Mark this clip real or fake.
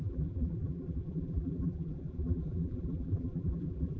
fake